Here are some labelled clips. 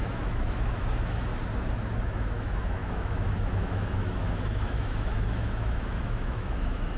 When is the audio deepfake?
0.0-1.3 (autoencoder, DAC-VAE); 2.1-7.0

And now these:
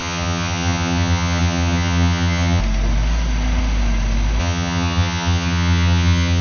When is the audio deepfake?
0.0-2.6 (vocoder, HiFi-GAN); 4.4-6.4

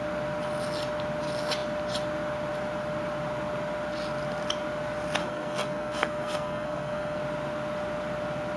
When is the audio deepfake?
5.2-7.2 (codec, SNAC)